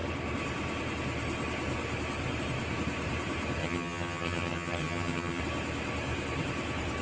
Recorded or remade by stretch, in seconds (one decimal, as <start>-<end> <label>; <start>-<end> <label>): 0.0-3.6 recorded; 3.6-5.4 remade; 5.4-7.0 recorded